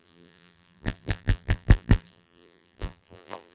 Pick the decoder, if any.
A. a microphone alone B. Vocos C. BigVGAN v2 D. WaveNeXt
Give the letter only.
C